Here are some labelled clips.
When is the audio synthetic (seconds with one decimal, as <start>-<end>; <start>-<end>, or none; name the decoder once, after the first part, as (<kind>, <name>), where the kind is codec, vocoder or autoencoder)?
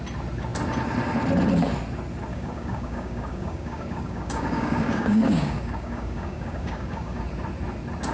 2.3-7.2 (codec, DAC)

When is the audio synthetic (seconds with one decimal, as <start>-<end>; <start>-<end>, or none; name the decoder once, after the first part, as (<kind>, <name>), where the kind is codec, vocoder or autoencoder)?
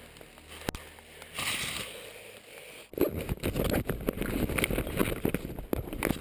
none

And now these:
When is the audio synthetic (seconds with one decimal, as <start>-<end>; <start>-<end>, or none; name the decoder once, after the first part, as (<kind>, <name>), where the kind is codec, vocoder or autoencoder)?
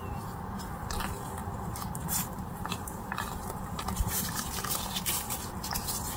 1.4-4.3 (vocoder, BigVGAN v2)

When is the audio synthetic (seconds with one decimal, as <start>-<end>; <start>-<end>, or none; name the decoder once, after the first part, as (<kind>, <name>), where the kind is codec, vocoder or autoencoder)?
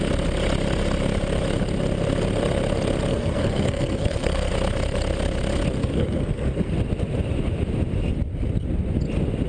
3.1-4.5 (codec, SNAC); 5.8-6.7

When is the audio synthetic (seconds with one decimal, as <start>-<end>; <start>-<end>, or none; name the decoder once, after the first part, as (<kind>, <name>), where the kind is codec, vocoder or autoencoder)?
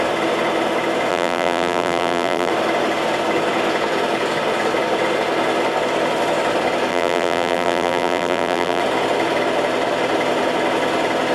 1.1-2.5 (vocoder, BigVGAN v2); 6.9-8.8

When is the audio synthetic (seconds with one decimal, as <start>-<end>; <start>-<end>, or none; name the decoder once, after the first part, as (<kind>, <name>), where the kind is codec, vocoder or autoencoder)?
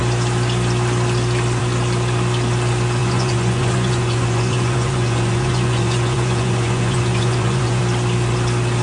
3.0-7.8 (vocoder, Vocos)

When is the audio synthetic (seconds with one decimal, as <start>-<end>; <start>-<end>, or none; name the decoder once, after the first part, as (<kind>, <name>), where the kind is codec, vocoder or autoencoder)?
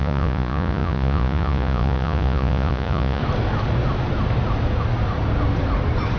0.0-3.2 (vocoder, Vocos)